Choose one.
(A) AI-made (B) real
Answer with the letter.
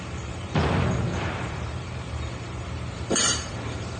A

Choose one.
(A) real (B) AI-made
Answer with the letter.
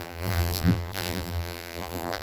B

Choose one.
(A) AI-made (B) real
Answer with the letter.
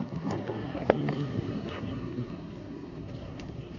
A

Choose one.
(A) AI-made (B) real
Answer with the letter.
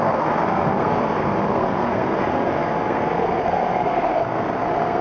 A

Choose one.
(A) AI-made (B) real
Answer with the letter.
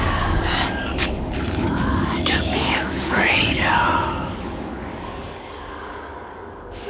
A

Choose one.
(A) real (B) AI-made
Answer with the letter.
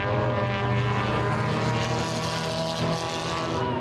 A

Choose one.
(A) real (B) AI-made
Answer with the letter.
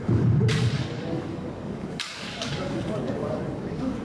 B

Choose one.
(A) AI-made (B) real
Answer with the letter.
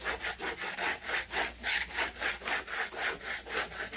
B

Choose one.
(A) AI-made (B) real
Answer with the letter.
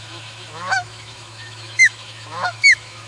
A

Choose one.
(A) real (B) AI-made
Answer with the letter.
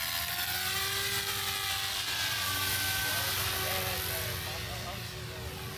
A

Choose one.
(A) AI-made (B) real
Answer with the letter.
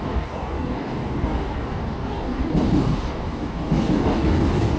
A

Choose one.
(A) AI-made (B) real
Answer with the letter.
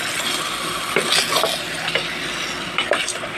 B